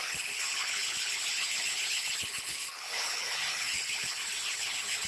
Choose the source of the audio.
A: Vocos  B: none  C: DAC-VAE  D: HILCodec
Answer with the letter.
D